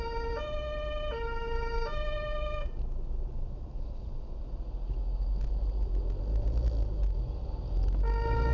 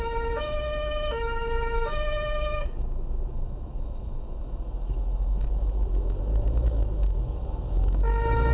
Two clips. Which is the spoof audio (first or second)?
second